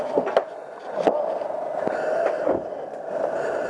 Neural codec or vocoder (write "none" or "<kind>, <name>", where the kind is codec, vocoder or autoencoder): none